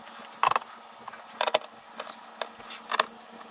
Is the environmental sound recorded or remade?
recorded